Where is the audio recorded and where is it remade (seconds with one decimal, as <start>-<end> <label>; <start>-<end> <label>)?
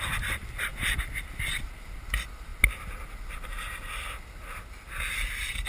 0.0-5.7 recorded